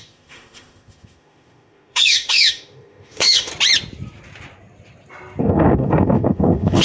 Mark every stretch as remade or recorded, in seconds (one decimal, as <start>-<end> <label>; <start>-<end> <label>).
0.0-3.5 remade; 3.5-5.4 recorded; 5.4-6.8 remade